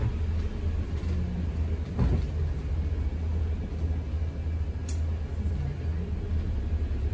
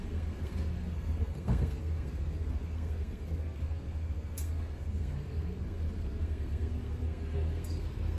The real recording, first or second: first